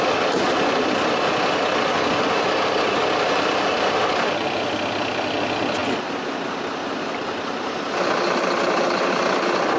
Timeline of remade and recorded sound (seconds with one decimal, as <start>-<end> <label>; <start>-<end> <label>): 0.0-9.8 recorded